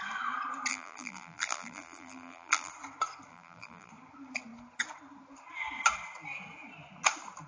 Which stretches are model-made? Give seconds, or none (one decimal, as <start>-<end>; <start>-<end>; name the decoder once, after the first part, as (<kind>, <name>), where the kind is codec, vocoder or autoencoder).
0.7-2.7 (vocoder, BigVGAN v2); 3.3-3.9